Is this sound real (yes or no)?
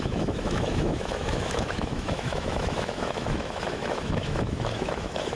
no